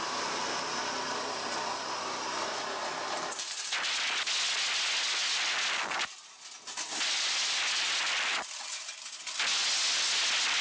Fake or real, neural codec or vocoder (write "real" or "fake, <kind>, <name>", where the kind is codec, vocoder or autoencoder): real